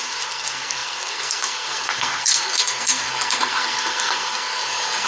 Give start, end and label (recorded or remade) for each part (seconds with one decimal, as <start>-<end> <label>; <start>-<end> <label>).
0.0-5.1 remade